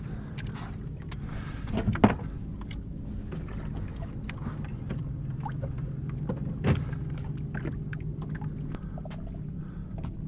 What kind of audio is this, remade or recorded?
recorded